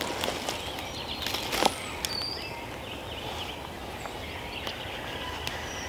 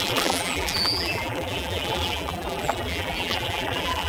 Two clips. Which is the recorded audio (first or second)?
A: first